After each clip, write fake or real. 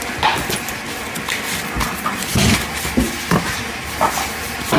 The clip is real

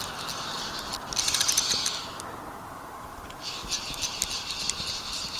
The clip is real